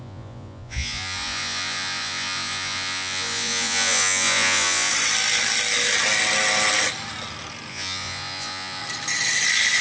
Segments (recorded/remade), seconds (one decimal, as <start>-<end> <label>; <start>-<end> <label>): 0.0-4.9 remade; 4.9-7.7 recorded; 7.7-8.8 remade; 8.8-9.8 recorded